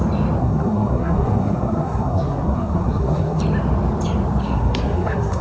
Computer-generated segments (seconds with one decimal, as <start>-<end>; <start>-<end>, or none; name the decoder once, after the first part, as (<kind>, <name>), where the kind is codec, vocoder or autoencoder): 0.4-3.4 (codec, SNAC); 4.4-5.4